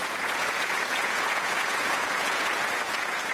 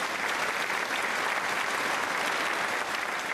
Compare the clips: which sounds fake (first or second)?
first